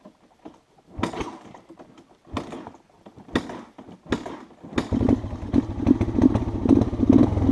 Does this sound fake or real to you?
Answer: real